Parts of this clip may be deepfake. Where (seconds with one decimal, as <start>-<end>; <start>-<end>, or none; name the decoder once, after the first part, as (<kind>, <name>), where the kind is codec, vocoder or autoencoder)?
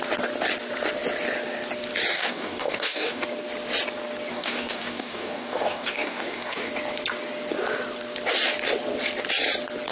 2.1-3.2 (codec, DAC); 4.3-6.7